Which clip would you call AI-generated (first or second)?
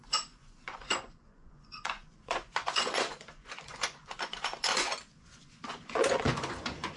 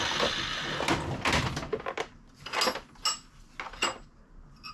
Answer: first